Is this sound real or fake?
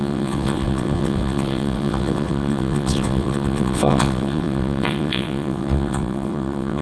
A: fake